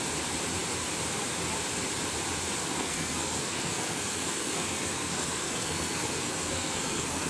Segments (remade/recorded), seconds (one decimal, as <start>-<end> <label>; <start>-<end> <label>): 0.0-2.6 recorded; 2.6-7.3 remade